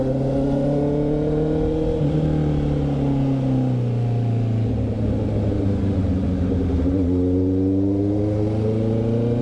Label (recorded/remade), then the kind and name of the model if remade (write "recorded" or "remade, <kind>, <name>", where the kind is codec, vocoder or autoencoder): recorded